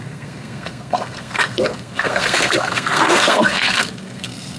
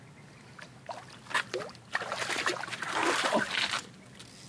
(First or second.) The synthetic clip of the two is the first